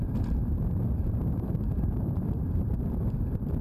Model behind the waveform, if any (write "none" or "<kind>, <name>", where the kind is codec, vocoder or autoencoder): vocoder, BigVGAN v2